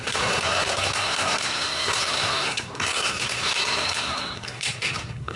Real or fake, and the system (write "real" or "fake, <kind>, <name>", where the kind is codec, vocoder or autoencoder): fake, codec, SNAC